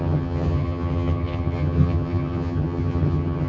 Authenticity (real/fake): fake